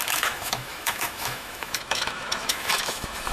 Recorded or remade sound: remade